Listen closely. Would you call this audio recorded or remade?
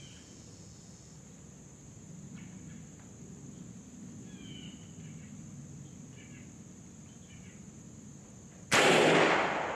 recorded